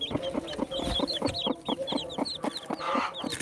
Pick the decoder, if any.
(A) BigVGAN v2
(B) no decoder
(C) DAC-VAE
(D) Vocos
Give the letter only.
B